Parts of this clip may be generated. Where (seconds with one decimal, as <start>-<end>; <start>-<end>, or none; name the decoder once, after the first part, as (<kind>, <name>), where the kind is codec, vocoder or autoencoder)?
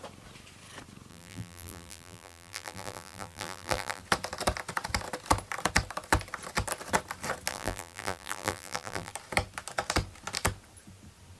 1.1-4.0 (vocoder, BigVGAN v2); 7.5-9.1